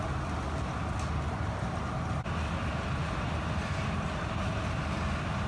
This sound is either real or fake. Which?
real